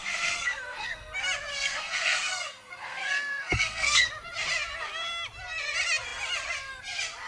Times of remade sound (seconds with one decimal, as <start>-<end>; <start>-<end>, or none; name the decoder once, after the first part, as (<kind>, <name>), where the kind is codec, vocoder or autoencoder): 0.0-1.0 (codec, SNAC); 1.5-4.1